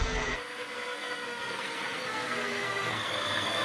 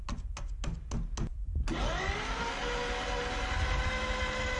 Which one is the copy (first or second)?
first